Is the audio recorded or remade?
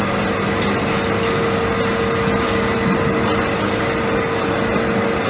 recorded